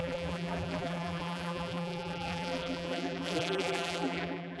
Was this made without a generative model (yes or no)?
no